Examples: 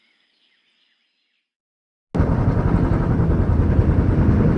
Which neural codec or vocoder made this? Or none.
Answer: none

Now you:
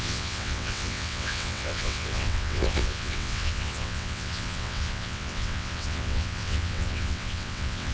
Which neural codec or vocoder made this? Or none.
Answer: vocoder, WaveNeXt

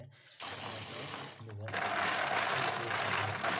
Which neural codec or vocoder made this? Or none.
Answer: none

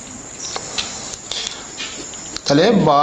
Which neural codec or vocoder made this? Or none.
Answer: none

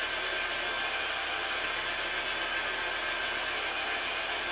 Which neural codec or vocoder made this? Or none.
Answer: none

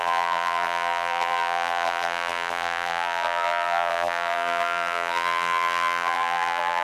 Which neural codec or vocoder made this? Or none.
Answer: vocoder, BigVGAN v2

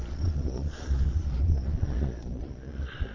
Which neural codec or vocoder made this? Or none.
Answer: vocoder, Vocos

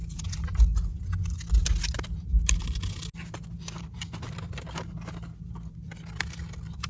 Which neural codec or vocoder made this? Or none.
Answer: none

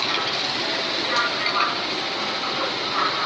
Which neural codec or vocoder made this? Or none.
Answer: none